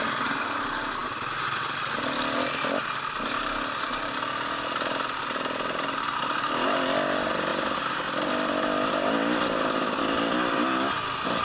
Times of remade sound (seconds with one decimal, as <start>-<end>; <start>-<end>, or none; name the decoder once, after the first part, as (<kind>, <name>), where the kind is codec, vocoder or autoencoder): none